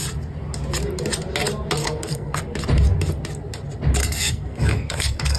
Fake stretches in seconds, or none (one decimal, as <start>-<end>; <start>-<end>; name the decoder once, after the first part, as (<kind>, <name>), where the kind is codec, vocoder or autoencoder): 1.8-2.4 (codec, SNAC); 4.0-5.4